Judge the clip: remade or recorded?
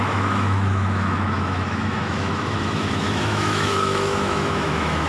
remade